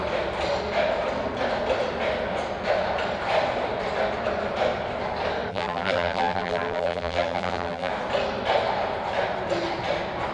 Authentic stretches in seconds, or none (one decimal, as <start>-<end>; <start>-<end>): 0.0-5.5; 7.9-10.3